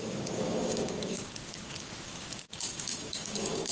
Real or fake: fake